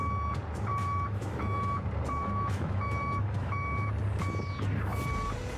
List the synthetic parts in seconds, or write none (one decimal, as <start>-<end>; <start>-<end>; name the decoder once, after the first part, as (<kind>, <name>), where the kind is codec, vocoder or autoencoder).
0.7-1.8 (autoencoder, DAC-VAE); 2.2-3.9